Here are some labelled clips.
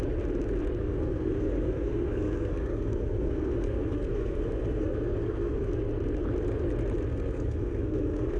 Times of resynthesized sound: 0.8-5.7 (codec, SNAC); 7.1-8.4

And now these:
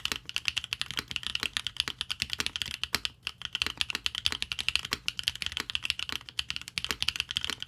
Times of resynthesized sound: none

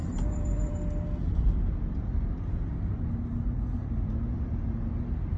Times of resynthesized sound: 0.0-0.7 (vocoder, BigVGAN v2)

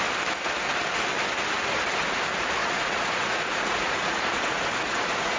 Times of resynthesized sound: 2.6-5.4 (vocoder, Vocos)

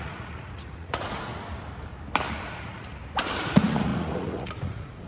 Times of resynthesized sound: 0.0-1.3 (vocoder, Vocos); 2.5-2.9; 3.5-5.1

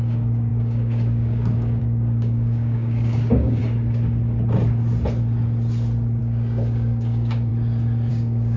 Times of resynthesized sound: 0.0-3.6 (codec, DAC); 6.2-7.5; 8.1-8.6

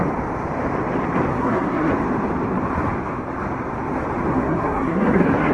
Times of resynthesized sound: 1.3-1.9 (codec, SNAC); 4.3-5.5

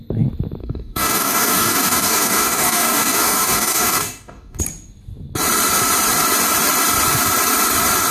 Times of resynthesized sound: 0.6-4.6 (codec, DAC)